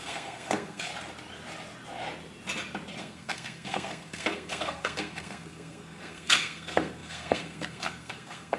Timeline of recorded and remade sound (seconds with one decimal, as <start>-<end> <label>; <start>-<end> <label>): 0.0-0.9 remade; 0.9-3.0 recorded; 3.0-8.6 remade

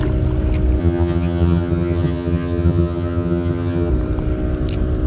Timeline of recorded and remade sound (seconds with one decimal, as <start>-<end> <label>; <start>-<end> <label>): 0.0-0.8 recorded; 0.8-3.9 remade; 3.9-5.1 recorded

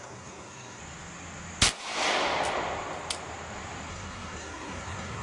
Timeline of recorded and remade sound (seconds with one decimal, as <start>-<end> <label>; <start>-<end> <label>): 0.0-0.8 remade; 0.8-3.9 recorded; 3.9-5.2 remade

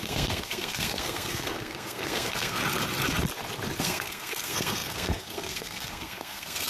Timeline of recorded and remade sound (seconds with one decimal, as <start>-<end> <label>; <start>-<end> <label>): 0.0-2.6 remade; 2.6-3.8 recorded; 3.8-6.7 remade